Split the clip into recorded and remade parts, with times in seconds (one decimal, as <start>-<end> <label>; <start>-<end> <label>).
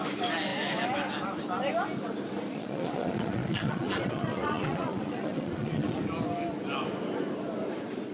0.0-2.5 recorded; 2.5-6.0 remade; 6.0-8.1 recorded